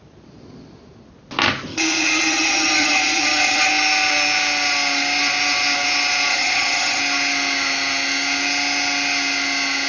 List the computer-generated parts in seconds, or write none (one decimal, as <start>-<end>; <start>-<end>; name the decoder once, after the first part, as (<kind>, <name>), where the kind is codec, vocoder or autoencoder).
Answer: 1.7-3.7 (vocoder, HiFi-GAN); 6.3-7.0

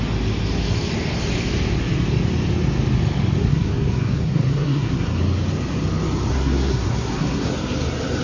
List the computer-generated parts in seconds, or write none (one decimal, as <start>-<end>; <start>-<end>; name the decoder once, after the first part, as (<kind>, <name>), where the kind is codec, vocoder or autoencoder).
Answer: 3.4-5.2 (codec, SNAC); 6.3-7.5

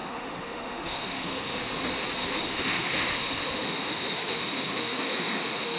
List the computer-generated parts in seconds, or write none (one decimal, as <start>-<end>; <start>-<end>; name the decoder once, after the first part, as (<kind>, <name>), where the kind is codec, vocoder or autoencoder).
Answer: 0.0-1.6 (autoencoder, DAC-VAE); 2.2-5.8

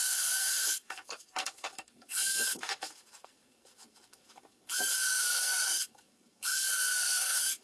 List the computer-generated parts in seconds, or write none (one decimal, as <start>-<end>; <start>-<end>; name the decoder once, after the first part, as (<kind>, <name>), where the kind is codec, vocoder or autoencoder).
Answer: 0.0-7.6 (codec, SNAC)

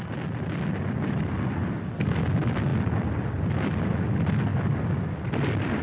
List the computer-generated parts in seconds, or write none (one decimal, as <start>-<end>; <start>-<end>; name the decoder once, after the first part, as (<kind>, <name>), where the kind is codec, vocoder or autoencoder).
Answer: 2.7-3.8 (vocoder, BigVGAN v2); 4.5-5.8

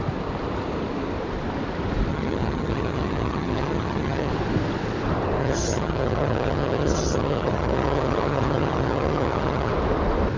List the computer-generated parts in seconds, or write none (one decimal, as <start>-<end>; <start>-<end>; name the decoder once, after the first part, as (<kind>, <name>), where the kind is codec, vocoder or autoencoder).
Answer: 2.1-4.3 (vocoder, HiFi-GAN); 5.4-9.7